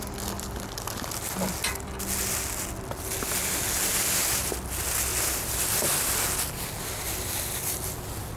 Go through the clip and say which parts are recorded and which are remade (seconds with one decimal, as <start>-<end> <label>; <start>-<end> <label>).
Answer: 0.0-5.1 recorded; 5.1-6.2 remade; 6.2-8.4 recorded